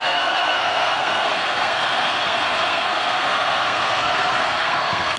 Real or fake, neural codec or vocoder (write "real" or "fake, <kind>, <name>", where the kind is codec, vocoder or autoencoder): fake, codec, SNAC